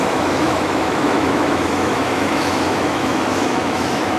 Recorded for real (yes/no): no